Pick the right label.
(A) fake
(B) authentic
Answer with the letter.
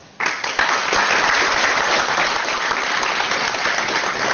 B